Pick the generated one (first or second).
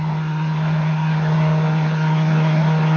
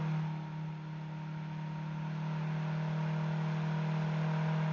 first